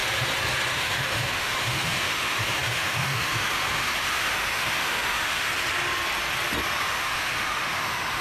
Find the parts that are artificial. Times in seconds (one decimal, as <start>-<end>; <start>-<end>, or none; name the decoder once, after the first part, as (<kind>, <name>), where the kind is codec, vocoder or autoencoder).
0.7-5.5 (autoencoder, DAC-VAE); 6.8-8.2